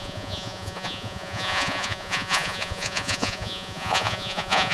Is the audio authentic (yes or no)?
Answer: no